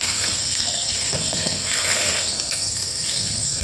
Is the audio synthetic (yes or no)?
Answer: yes